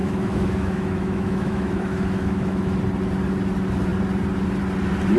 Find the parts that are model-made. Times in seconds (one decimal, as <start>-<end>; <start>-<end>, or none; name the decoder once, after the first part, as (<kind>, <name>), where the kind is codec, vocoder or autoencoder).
0.0-2.8 (autoencoder, DAC-VAE)